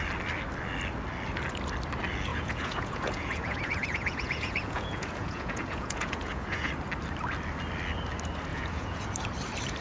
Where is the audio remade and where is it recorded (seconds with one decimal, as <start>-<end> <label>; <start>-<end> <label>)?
0.0-2.3 recorded; 2.3-6.7 remade; 6.7-8.5 recorded; 8.5-9.1 remade; 9.1-9.8 recorded